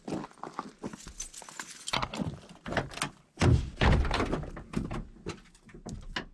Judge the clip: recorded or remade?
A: recorded